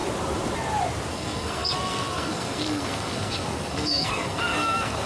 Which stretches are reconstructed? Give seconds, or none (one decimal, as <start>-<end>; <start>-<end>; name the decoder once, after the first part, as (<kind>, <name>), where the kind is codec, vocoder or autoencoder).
1.1-5.1 (codec, SNAC)